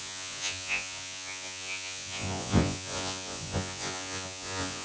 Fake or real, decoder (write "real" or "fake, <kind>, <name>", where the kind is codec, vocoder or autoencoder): fake, vocoder, Vocos